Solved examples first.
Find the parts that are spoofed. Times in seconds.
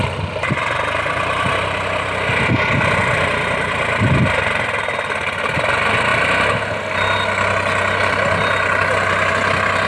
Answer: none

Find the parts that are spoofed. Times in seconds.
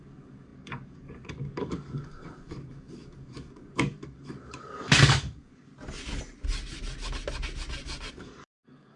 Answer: 0.0-5.7 (codec, DAC); 8.1-9.0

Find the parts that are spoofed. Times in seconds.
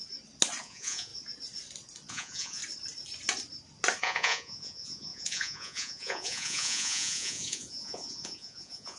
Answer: 0.6-1.1 (vocoder, Vocos); 2.1-2.6; 4.0-9.0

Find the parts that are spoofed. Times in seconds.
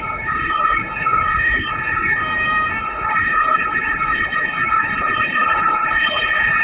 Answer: 0.0-2.2 (codec, HILCodec); 2.8-6.6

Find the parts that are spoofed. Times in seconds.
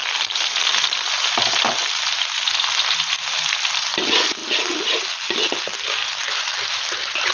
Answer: none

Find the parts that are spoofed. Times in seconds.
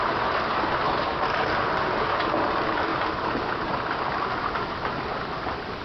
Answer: 2.9-4.4 (vocoder, BigVGAN v2)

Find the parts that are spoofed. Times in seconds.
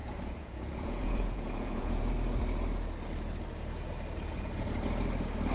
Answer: 0.0-2.1 (vocoder, Vocos)